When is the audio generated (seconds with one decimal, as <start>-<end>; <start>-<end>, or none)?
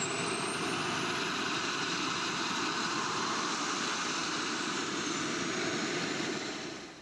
1.6-3.2; 4.2-4.8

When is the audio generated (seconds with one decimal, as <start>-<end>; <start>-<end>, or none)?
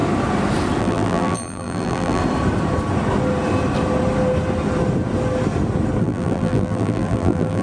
0.8-2.2; 6.0-7.6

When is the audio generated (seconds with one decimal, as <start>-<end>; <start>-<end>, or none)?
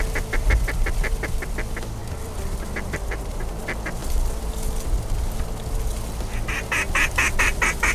0.0-4.0; 7.3-7.9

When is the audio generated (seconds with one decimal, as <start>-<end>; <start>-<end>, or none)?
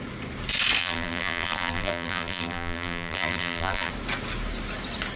0.8-3.9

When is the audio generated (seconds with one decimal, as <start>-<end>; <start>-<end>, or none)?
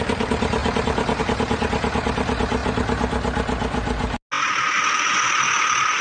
0.0-0.6; 1.2-2.6; 5.5-6.0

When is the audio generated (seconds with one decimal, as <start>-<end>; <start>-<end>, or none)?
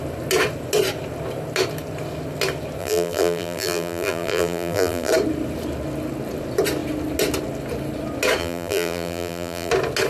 2.8-5.1; 8.4-9.7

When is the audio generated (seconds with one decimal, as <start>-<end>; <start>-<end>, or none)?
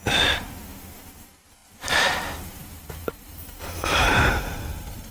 1.6-4.4